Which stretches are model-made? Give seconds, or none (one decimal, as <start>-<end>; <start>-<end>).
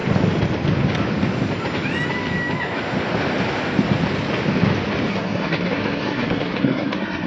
5.1-7.3